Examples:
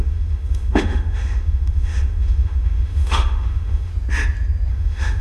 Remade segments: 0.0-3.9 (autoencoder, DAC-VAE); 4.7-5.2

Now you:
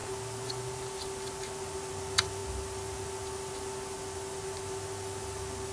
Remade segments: none

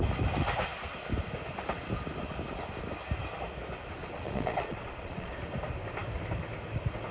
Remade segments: 4.0-5.3 (vocoder, Vocos)